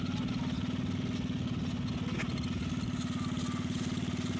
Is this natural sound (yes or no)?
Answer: yes